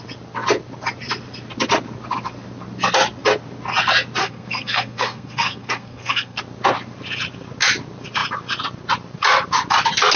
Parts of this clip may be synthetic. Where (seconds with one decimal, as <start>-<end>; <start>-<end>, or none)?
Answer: 4.2-6.4